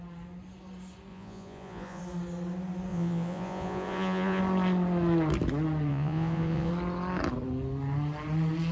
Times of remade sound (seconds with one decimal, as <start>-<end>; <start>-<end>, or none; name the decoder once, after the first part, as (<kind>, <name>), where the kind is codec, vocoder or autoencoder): 1.1-2.0 (vocoder, Vocos); 2.9-4.4; 5.9-6.7

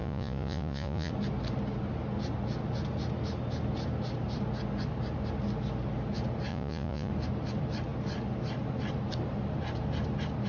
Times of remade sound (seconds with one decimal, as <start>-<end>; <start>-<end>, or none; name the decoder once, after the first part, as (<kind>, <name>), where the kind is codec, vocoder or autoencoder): 0.0-1.1 (vocoder, Vocos); 6.5-7.1

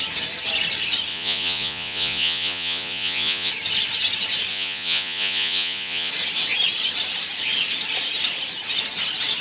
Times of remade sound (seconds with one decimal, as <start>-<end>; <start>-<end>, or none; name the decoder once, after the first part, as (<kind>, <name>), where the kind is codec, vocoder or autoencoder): 1.1-3.5 (vocoder, Vocos); 4.5-6.1

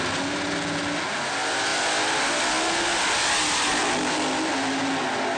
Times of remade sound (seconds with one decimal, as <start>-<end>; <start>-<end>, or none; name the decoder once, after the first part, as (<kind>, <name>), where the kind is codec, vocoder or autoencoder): none

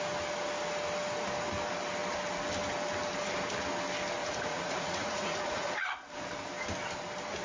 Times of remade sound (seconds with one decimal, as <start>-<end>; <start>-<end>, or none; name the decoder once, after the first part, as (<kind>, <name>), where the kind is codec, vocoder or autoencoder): 4.2-5.7 (vocoder, Vocos)

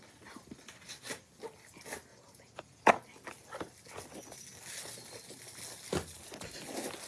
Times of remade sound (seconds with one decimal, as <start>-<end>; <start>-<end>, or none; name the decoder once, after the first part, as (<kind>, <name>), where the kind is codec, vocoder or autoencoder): 2.1-2.9 (vocoder, Vocos)